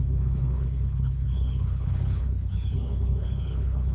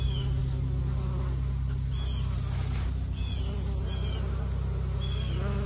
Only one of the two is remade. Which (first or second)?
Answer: first